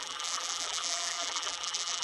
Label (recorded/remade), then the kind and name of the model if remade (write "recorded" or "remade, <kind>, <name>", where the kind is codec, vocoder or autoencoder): remade, vocoder, BigVGAN v2